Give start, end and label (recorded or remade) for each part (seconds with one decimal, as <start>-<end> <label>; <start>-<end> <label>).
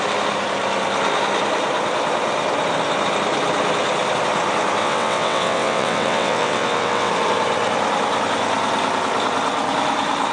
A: 0.0-4.8 recorded; 4.8-7.1 remade; 7.1-10.3 recorded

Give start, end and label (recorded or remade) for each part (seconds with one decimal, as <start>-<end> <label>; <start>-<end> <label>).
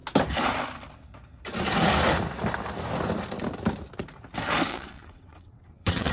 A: 0.0-4.7 recorded; 4.7-6.1 remade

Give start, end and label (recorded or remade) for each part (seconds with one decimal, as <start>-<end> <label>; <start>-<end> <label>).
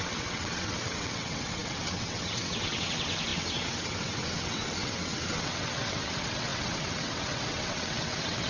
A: 0.0-8.5 remade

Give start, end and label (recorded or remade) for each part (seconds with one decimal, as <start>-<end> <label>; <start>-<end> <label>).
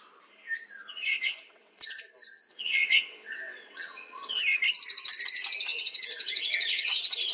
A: 0.0-0.9 recorded; 0.9-2.1 remade; 2.1-2.5 recorded; 2.5-4.4 remade; 4.4-5.7 recorded; 5.7-7.3 remade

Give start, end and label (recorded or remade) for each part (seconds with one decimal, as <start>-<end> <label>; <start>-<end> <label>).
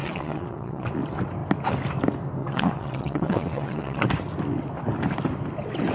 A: 0.0-0.9 remade; 0.9-2.4 recorded; 2.4-4.1 remade; 4.1-5.9 recorded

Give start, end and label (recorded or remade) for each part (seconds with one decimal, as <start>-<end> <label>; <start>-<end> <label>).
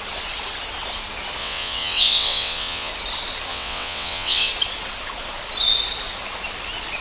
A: 0.0-1.4 recorded; 1.4-2.9 remade; 2.9-3.5 recorded; 3.5-4.5 remade; 4.5-7.0 recorded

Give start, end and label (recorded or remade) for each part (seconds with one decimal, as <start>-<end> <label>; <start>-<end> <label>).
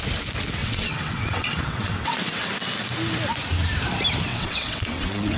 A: 0.0-0.6 recorded; 0.6-2.5 remade; 2.5-4.3 recorded; 4.3-5.4 remade